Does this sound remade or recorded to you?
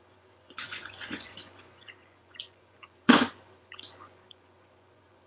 remade